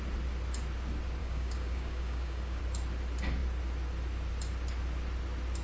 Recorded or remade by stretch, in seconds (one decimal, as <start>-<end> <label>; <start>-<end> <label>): 0.0-1.2 recorded; 1.2-2.6 remade; 2.6-5.6 recorded